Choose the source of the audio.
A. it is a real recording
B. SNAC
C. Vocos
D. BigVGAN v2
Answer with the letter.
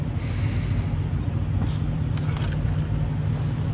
A